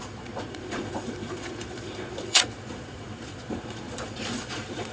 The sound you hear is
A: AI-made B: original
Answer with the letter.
A